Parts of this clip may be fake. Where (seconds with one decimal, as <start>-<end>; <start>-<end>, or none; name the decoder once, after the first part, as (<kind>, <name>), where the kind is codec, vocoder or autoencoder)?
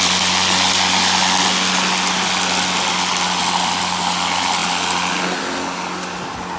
none